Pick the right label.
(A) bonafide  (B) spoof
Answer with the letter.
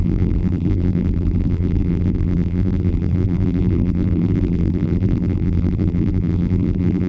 B